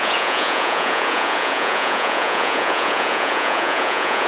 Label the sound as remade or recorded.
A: remade